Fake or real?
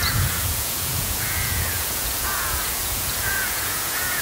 fake